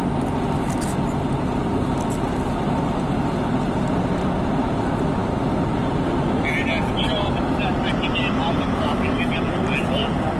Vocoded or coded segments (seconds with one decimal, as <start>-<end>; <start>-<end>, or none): none